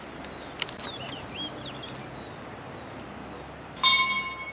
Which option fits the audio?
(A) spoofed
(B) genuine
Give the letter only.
B